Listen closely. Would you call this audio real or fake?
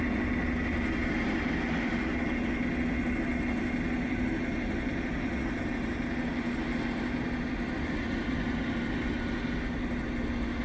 real